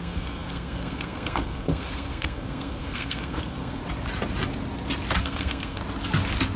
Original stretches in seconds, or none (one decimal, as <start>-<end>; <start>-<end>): 3.8-5.2; 5.8-6.6